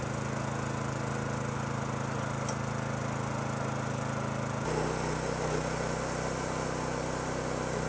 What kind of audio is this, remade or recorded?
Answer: recorded